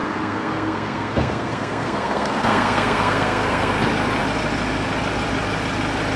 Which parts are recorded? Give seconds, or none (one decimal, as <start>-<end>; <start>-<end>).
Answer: 3.7-6.2